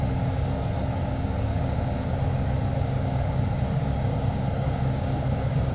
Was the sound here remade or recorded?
remade